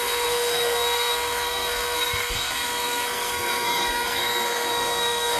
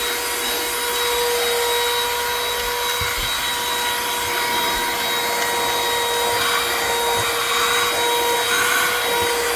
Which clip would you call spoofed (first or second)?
first